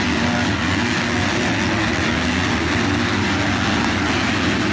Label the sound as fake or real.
real